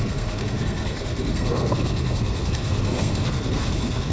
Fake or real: fake